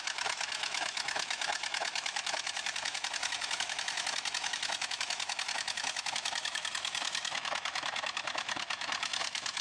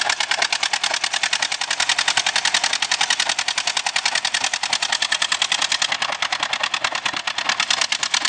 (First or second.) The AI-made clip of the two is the first